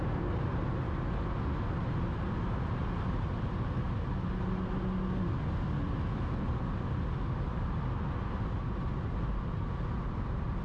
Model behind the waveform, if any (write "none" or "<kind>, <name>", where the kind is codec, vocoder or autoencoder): none